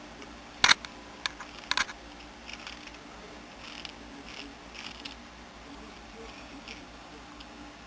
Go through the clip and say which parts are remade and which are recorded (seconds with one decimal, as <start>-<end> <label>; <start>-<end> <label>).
0.0-7.9 recorded